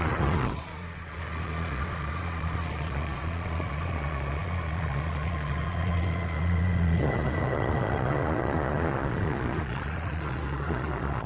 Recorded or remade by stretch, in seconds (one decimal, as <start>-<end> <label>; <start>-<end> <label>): 0.0-11.3 remade